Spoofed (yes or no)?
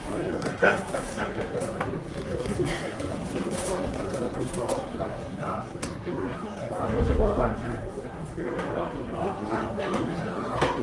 yes